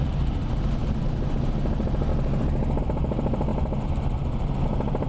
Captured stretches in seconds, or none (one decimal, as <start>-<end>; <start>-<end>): 2.1-2.8

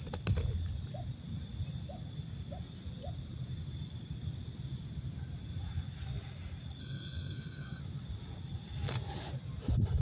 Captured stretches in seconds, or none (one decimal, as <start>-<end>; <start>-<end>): 0.0-6.8; 7.8-10.0

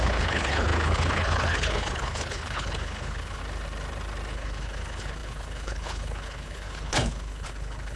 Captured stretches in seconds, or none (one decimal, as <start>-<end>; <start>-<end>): 3.4-4.3

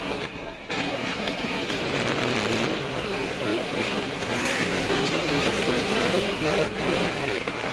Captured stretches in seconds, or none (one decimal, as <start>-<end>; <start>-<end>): 1.8-2.8

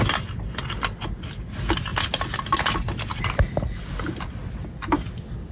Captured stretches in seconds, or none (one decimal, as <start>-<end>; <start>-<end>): 0.0-5.5